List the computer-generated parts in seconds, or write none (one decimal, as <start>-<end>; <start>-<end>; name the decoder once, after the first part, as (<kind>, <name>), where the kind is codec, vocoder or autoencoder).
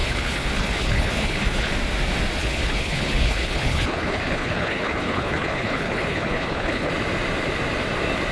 0.0-1.7 (codec, HILCodec); 2.4-6.9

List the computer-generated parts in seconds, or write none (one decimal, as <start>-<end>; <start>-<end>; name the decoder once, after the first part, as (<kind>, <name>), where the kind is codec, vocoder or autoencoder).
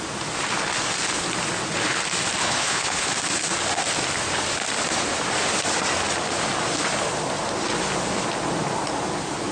2.4-3.1 (codec, HILCodec)